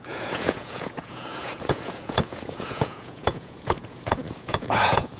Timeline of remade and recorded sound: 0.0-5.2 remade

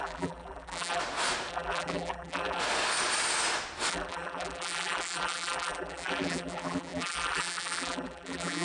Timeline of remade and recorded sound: 0.0-1.0 remade; 1.0-1.5 recorded; 1.5-2.6 remade; 2.6-3.9 recorded; 3.9-8.6 remade